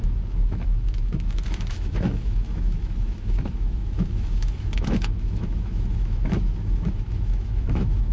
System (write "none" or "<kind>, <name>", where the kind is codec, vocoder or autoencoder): autoencoder, DAC-VAE